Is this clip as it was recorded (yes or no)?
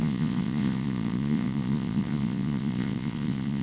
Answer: no